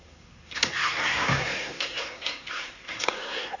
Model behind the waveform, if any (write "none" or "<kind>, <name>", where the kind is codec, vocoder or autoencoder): codec, SNAC